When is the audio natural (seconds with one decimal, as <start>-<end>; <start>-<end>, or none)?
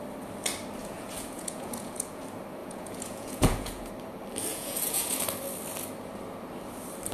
0.0-0.8; 2.2-2.6; 3.9-4.5; 5.1-7.1